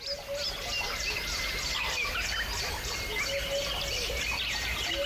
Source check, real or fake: real